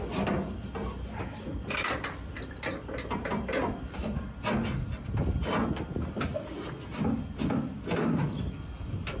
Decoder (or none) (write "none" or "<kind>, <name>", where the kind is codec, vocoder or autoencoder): none